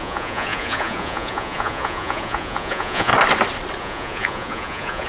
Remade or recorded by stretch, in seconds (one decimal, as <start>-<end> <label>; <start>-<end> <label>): 0.0-3.1 remade; 3.1-3.8 recorded; 3.8-5.1 remade